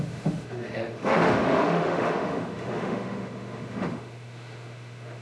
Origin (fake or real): fake